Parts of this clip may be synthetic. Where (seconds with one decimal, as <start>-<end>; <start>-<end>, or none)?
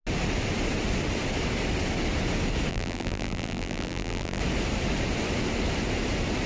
2.7-4.4